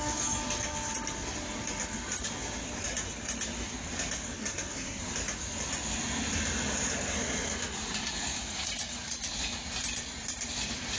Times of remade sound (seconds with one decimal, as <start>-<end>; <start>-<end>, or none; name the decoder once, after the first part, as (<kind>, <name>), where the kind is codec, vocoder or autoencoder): 4.4-5.0 (codec, SNAC)